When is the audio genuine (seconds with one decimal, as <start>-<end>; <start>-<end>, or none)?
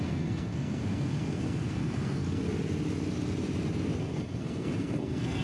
2.5-4.0